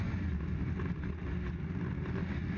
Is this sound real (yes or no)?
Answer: yes